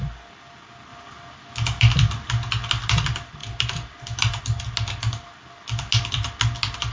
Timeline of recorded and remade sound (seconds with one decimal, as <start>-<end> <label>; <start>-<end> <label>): 0.0-6.9 recorded